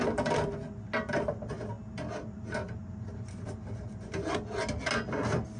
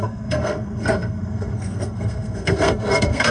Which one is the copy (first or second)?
second